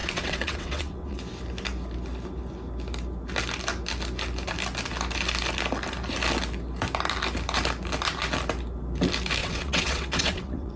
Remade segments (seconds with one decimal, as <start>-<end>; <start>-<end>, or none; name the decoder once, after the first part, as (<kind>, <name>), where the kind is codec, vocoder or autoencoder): 0.0-1.2 (vocoder, WaveNeXt); 9.4-10.8